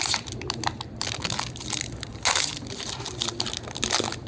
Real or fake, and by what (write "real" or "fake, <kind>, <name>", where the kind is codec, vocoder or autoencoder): real